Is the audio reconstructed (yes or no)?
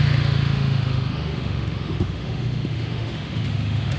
yes